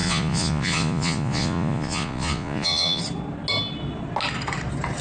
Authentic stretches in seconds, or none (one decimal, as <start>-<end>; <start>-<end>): 3.0-5.0